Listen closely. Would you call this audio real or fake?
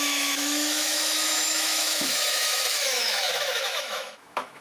fake